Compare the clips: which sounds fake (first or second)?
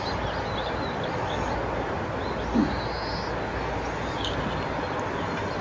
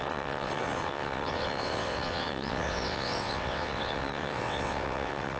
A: second